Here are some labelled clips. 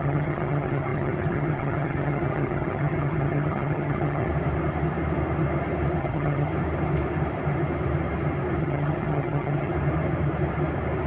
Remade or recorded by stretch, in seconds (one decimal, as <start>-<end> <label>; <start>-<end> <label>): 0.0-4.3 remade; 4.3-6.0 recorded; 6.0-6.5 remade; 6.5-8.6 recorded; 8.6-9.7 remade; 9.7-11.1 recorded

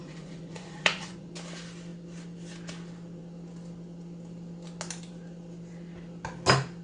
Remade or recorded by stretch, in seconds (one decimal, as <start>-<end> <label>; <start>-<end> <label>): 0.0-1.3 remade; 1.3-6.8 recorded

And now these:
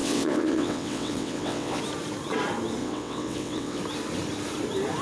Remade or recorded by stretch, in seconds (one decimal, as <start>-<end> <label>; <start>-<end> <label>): 0.0-1.8 remade; 1.8-2.8 recorded; 2.8-3.8 remade; 3.8-5.0 recorded

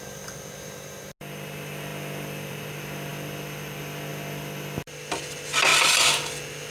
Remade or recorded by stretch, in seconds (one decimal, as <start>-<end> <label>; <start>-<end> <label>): 0.0-6.7 recorded

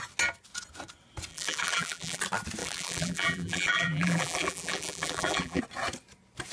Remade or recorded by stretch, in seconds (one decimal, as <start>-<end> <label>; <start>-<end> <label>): 0.0-1.3 recorded; 1.3-2.2 remade; 2.2-2.6 recorded; 2.6-5.6 remade; 5.6-6.5 recorded